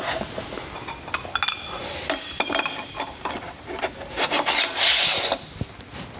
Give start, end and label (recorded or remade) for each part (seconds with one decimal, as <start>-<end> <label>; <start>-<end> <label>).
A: 0.0-1.8 recorded; 1.8-3.8 remade; 3.8-6.2 recorded